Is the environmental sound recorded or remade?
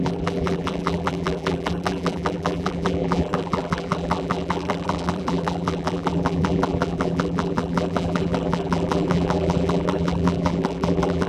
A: remade